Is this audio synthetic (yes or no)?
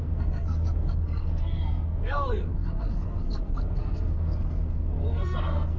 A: yes